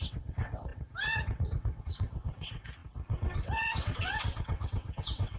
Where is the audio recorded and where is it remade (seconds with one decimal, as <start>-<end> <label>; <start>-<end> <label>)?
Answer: 0.0-5.4 remade